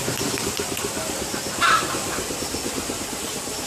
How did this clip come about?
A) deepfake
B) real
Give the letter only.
B